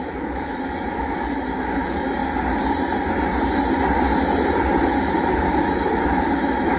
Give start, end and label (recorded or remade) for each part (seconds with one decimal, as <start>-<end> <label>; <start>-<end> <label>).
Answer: 0.0-2.2 remade; 2.2-4.8 recorded; 4.8-6.8 remade